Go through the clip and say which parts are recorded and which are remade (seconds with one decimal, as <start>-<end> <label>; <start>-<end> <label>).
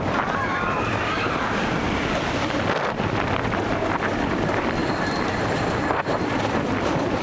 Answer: 0.0-4.8 recorded; 4.8-6.2 remade; 6.2-7.2 recorded